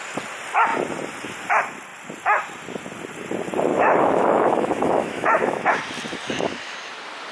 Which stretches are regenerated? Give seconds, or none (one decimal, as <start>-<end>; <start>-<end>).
3.7-5.7